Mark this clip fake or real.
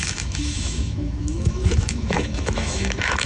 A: fake